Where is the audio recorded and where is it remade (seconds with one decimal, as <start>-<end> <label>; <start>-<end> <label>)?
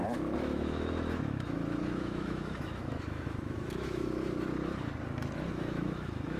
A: 0.0-4.6 remade; 4.6-5.5 recorded; 5.5-6.4 remade